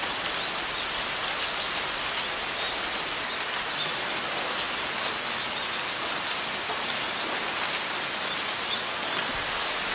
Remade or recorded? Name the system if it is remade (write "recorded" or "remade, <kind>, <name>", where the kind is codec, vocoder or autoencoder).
recorded